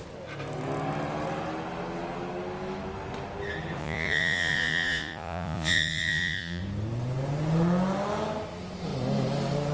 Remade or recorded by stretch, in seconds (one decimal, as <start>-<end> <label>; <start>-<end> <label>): 0.0-3.8 recorded; 3.8-6.6 remade; 6.6-9.7 recorded